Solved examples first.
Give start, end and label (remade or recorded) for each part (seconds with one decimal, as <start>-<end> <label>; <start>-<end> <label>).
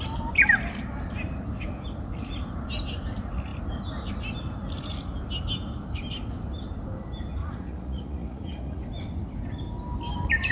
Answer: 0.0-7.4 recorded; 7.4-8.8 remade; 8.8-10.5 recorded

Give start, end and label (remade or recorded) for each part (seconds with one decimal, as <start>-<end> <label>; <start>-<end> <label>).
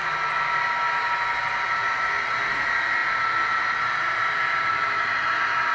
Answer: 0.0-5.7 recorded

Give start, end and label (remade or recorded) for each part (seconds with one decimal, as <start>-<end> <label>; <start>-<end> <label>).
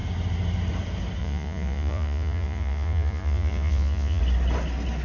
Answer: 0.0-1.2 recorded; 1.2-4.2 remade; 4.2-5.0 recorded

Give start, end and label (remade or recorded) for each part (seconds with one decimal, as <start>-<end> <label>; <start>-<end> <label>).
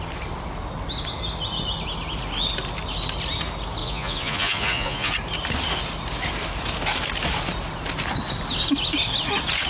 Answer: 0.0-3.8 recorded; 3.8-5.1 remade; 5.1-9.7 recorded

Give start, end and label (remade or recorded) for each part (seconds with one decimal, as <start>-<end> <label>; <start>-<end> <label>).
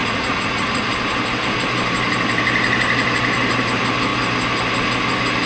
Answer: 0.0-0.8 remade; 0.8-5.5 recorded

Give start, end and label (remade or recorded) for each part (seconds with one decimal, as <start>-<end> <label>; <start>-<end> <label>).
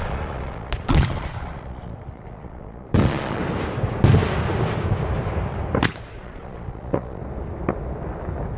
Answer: 0.0-3.4 remade; 3.4-5.9 recorded; 5.9-7.2 remade; 7.2-8.6 recorded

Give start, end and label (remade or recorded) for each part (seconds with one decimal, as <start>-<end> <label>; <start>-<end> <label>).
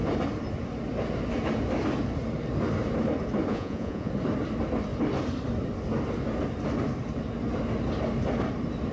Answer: 0.0-3.5 recorded; 3.5-4.1 remade; 4.1-8.9 recorded